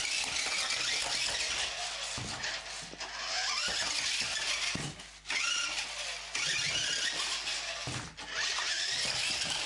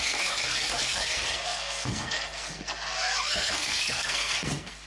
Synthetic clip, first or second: second